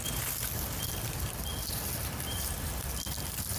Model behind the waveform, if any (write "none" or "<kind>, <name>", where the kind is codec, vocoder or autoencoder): none